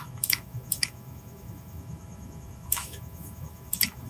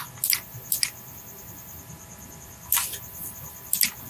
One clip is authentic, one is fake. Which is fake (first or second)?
first